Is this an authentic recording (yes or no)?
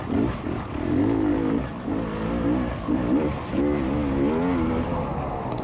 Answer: yes